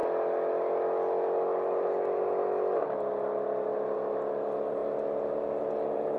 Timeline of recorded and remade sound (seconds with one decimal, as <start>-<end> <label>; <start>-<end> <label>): 0.0-6.2 recorded